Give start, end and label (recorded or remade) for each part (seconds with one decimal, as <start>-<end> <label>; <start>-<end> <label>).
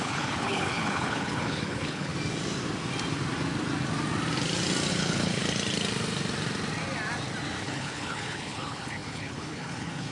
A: 0.0-2.1 remade; 2.1-4.9 recorded; 4.9-5.4 remade; 5.4-7.6 recorded; 7.6-10.1 remade